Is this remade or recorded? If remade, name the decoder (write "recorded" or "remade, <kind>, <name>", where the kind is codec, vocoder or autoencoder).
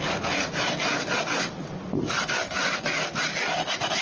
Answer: recorded